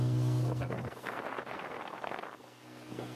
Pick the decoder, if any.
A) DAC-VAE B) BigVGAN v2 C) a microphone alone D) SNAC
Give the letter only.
D